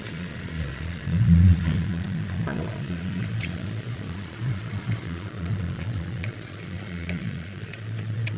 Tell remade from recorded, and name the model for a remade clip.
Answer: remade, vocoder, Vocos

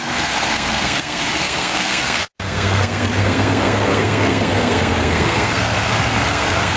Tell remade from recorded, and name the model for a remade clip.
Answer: remade, codec, SNAC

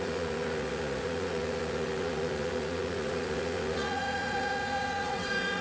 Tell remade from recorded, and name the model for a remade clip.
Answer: remade, vocoder, Vocos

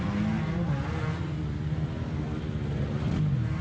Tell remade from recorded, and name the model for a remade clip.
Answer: recorded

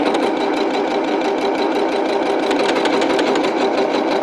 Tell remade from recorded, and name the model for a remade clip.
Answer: recorded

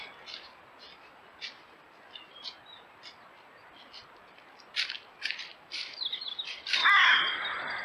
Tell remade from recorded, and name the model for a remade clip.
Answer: recorded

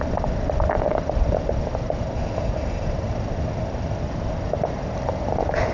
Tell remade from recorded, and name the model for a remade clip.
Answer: recorded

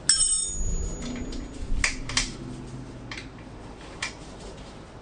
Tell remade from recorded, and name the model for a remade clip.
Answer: recorded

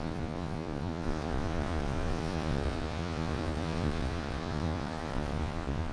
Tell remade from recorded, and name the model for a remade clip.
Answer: remade, vocoder, Vocos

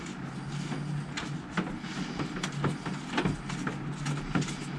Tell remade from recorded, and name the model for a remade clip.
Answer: recorded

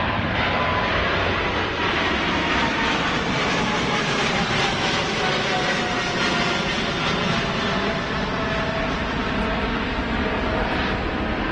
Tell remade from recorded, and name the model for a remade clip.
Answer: recorded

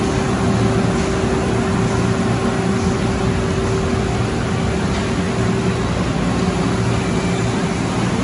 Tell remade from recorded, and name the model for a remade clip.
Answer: recorded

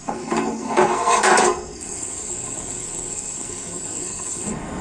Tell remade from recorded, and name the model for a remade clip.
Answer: remade, codec, SNAC